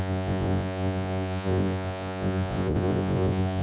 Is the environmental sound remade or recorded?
remade